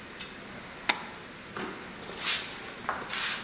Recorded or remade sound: recorded